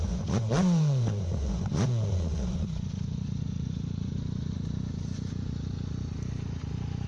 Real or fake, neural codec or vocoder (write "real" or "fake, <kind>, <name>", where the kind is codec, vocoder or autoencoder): fake, vocoder, Vocos